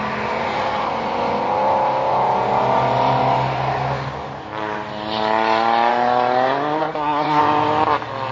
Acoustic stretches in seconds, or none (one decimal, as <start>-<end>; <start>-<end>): 0.0-6.8; 7.4-8.3